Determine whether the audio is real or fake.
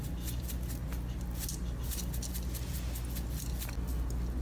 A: real